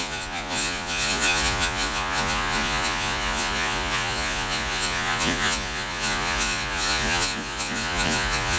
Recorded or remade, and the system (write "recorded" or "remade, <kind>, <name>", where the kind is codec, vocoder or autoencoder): remade, vocoder, Vocos